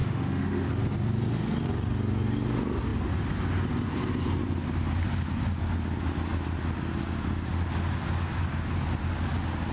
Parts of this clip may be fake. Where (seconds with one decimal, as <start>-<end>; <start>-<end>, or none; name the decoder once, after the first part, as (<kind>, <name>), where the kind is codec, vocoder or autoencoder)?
0.0-0.7 (autoencoder, DAC-VAE)